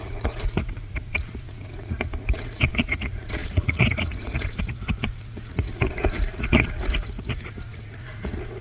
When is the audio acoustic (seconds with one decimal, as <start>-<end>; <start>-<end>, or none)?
none